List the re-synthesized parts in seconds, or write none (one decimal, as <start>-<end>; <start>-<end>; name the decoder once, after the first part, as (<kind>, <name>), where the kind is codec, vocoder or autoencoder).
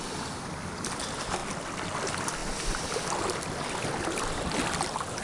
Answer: none